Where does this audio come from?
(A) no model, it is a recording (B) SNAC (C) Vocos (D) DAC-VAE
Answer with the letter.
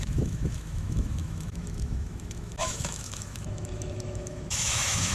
D